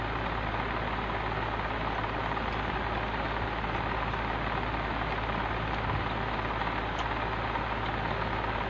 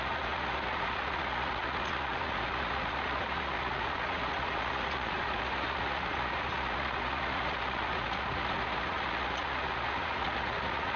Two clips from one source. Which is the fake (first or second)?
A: second